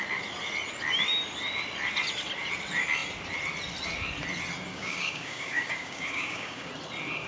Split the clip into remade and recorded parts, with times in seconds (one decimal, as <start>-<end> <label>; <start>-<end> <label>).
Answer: 0.0-4.7 recorded; 4.7-6.7 remade; 6.7-7.3 recorded